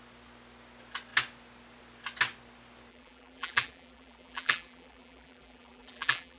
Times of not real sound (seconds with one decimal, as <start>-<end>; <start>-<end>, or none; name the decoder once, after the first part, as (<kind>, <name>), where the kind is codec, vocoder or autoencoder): 2.9-6.4 (vocoder, BigVGAN v2)